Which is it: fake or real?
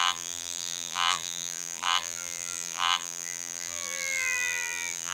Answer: fake